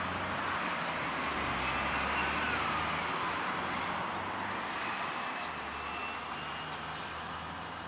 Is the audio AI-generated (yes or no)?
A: no